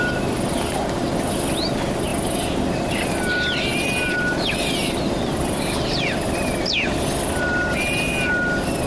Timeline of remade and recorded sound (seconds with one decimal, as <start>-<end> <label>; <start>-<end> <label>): 0.0-3.7 recorded; 3.7-6.7 remade; 6.7-8.9 recorded